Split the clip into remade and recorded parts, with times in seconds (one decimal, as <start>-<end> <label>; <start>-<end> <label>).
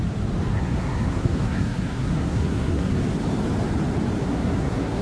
0.0-0.5 recorded; 0.5-2.9 remade; 2.9-4.2 recorded; 4.2-5.0 remade